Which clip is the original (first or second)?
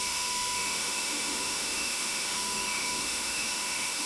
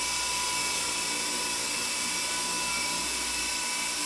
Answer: second